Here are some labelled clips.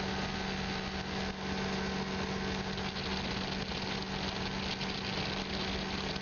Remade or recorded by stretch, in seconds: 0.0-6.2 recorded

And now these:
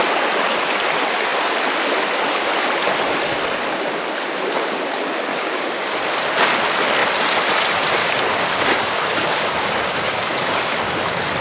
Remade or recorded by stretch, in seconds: 0.0-5.3 recorded; 5.3-6.0 remade; 6.0-8.0 recorded; 8.0-11.0 remade; 11.0-11.4 recorded

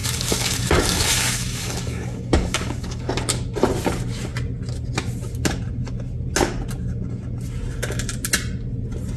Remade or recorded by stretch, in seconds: 0.0-3.1 remade; 3.1-9.2 recorded

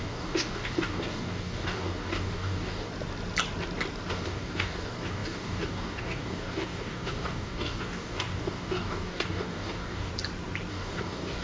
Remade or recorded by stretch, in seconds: 0.0-2.9 remade; 2.9-4.1 recorded; 4.1-10.1 remade; 10.1-10.7 recorded; 10.7-11.4 remade

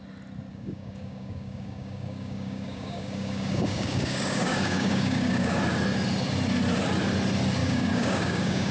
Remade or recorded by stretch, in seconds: 0.0-0.5 recorded; 0.5-5.6 remade; 5.6-7.6 recorded; 7.6-8.7 remade

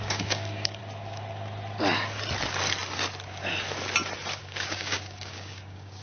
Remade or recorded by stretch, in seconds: 0.0-0.8 remade; 0.8-4.4 recorded; 4.4-6.0 remade

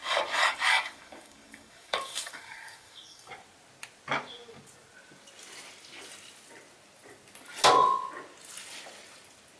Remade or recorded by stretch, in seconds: 0.0-3.3 remade; 3.3-9.6 recorded